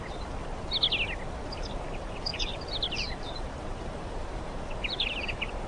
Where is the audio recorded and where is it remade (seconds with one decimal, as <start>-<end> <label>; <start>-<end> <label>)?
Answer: 0.0-2.3 recorded; 2.3-5.7 remade